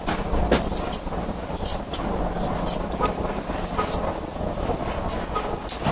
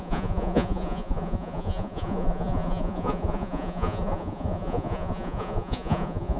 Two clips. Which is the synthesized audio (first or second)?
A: second